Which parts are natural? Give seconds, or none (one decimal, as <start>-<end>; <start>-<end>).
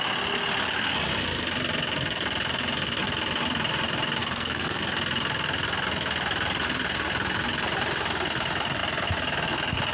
0.0-4.2; 4.8-9.9